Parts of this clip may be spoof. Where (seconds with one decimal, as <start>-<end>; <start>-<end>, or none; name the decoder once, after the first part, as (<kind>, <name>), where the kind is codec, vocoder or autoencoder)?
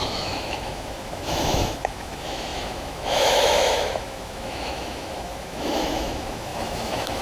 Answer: 0.0-7.2 (autoencoder, DAC-VAE)